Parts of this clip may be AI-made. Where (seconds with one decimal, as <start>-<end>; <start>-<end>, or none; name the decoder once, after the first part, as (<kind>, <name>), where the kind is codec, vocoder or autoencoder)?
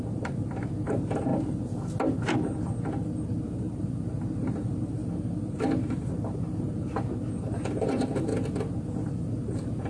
0.0-1.3 (vocoder, BigVGAN v2); 3.1-5.0; 5.5-8.3; 9.1-9.9